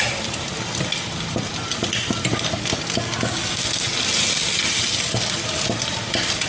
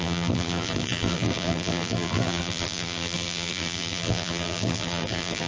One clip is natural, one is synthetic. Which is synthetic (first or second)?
second